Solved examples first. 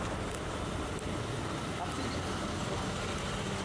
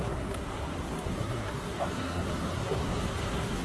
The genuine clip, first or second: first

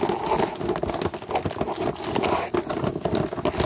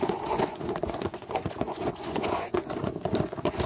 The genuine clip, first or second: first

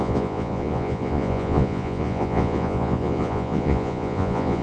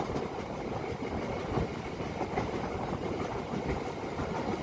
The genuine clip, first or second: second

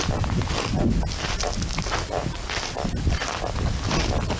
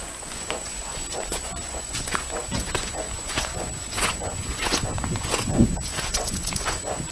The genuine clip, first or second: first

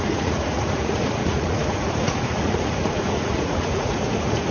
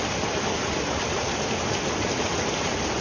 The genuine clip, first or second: second